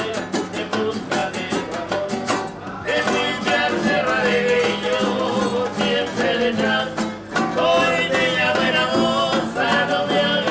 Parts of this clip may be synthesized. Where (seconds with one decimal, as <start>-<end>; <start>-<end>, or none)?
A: none